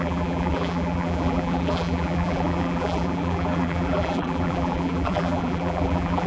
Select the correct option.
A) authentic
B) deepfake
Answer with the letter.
B